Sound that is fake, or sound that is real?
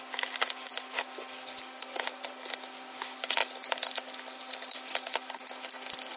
real